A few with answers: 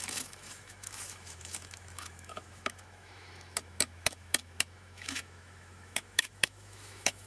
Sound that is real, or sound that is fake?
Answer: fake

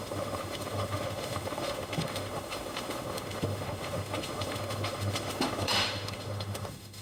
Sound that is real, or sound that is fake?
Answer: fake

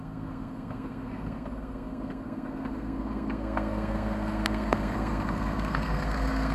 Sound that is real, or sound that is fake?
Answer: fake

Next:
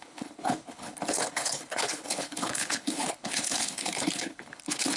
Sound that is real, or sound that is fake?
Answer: fake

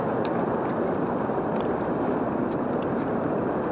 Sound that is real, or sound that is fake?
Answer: real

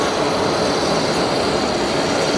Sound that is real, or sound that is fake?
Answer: real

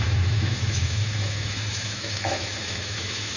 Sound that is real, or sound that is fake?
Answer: fake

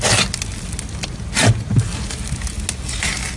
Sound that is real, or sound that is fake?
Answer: real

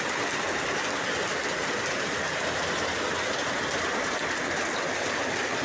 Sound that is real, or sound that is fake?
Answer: real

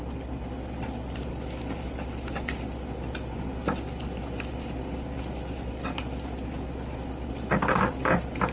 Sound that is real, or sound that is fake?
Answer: real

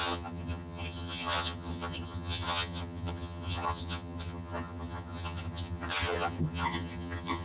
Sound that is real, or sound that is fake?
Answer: fake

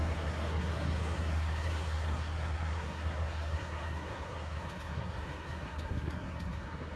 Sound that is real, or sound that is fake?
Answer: fake